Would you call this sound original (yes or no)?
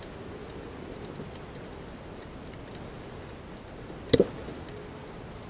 yes